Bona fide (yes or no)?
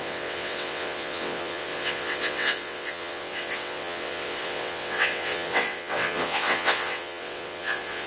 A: no